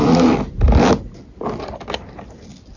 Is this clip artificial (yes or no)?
no